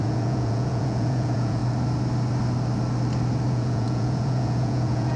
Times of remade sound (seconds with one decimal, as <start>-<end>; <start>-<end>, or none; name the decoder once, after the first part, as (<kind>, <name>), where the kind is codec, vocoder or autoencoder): 0.0-1.6 (vocoder, Vocos); 3.5-5.2